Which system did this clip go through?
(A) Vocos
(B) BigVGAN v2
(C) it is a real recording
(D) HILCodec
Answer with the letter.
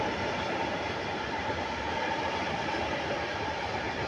B